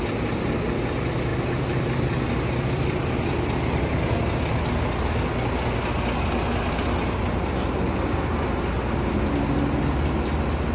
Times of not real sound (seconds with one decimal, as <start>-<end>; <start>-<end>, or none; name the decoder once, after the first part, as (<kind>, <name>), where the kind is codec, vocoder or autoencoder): 1.3-4.4 (vocoder, BigVGAN v2)

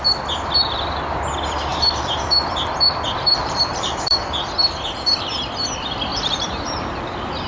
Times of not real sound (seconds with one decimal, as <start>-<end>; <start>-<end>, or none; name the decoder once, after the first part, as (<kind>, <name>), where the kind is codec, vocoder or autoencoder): 1.7-3.0 (vocoder, BigVGAN v2); 3.4-4.2; 6.1-6.9

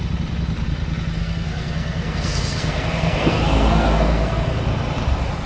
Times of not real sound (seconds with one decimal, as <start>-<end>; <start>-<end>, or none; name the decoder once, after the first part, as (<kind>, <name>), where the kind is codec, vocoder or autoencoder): 1.2-4.5 (codec, SNAC)

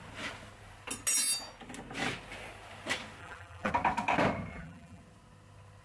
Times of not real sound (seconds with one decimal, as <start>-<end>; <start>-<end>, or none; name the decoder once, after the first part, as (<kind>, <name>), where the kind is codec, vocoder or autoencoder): 3.2-3.7 (vocoder, BigVGAN v2); 4.5-5.0

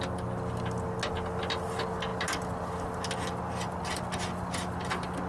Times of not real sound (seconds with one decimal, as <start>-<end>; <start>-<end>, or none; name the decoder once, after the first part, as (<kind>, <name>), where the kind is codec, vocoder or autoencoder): none

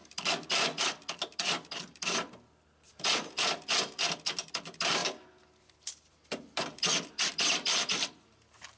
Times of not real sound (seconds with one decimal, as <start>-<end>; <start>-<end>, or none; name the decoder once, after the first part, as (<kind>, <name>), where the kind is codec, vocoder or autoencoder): 5.0-8.3 (vocoder, BigVGAN v2)